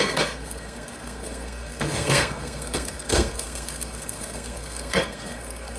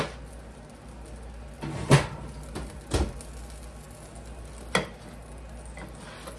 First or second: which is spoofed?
first